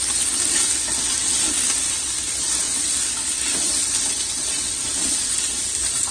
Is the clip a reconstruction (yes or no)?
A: no